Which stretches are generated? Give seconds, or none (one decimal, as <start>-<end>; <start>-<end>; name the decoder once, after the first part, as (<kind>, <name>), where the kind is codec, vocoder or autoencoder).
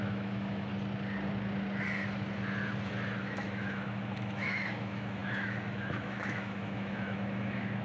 0.0-0.7 (autoencoder, DAC-VAE); 3.2-7.8